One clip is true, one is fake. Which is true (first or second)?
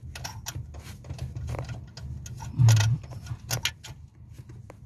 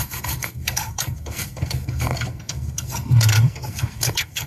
first